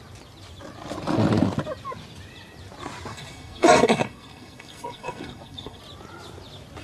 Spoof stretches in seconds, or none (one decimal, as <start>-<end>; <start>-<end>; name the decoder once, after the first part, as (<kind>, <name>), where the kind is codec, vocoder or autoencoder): 3.1-5.8 (codec, SNAC)